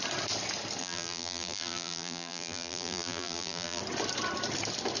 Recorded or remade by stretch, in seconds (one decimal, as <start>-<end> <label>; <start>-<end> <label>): 0.0-0.8 recorded; 0.8-3.8 remade; 3.8-5.0 recorded